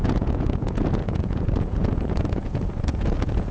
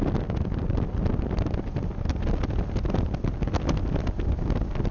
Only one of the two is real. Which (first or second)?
second